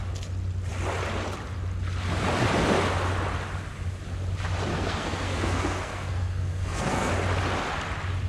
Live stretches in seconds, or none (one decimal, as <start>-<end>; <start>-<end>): 0.0-4.7; 7.1-8.3